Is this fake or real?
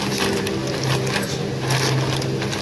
real